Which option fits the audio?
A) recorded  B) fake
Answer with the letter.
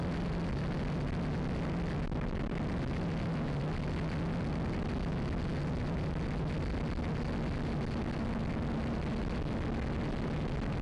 A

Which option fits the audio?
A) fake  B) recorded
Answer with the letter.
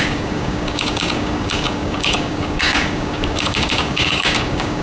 A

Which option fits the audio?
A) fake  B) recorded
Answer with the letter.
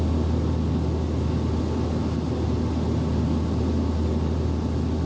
B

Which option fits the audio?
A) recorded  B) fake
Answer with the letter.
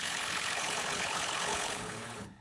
B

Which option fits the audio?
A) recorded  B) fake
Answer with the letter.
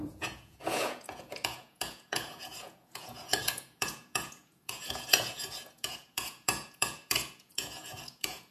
B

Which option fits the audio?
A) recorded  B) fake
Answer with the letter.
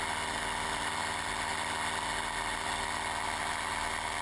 A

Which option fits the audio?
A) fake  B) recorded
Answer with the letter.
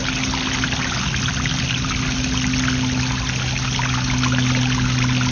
B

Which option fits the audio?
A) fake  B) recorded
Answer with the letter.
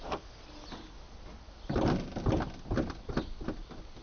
B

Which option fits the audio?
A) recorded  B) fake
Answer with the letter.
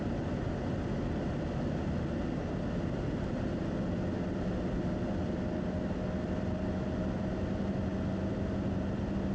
A